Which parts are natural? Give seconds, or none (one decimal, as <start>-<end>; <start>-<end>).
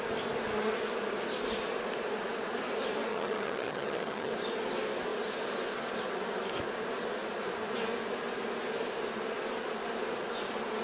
0.0-3.1; 4.3-10.8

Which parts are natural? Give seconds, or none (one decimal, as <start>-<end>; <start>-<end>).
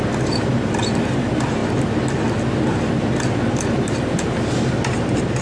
0.0-5.4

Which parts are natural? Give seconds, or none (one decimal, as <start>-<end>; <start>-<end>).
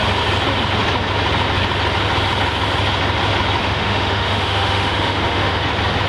0.0-3.6; 5.6-6.1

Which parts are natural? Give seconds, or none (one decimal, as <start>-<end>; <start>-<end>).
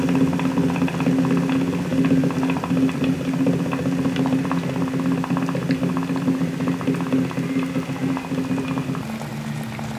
0.0-10.0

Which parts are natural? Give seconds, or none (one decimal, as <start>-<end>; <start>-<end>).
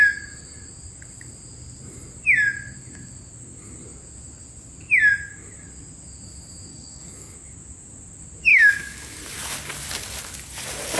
0.0-6.7; 7.3-8.5; 9.2-11.0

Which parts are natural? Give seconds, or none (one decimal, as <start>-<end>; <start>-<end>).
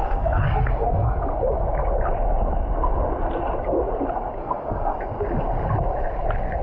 1.2-4.4; 5.0-6.6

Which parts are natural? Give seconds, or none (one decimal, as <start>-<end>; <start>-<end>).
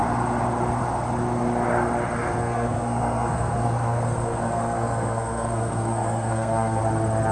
0.0-2.4; 6.8-7.3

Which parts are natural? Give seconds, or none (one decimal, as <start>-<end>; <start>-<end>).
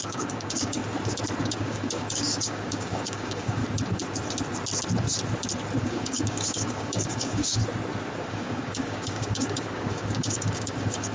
0.8-1.4; 3.6-5.8; 7.6-8.3